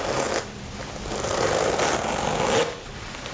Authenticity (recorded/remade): recorded